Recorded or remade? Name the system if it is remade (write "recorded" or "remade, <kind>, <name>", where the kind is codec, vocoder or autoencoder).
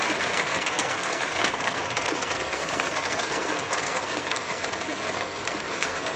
remade, codec, SNAC